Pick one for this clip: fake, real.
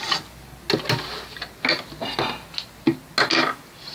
real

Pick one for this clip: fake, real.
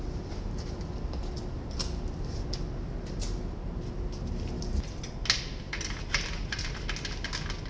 real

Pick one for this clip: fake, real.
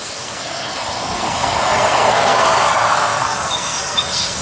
fake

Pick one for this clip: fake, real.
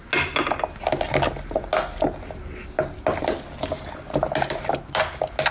real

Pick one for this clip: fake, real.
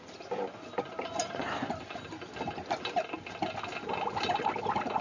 real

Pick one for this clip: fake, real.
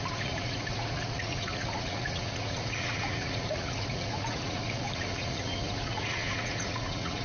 fake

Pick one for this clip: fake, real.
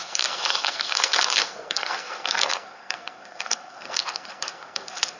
fake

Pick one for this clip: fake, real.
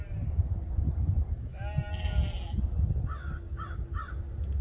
real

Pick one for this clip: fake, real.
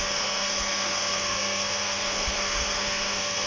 fake